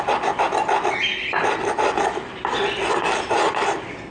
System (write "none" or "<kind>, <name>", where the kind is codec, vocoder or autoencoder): none